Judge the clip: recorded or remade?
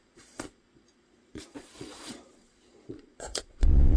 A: remade